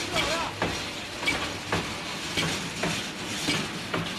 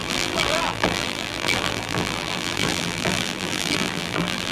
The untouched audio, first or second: first